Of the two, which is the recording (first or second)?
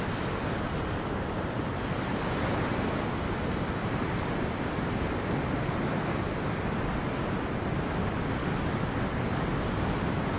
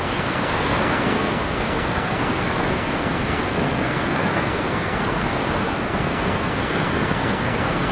first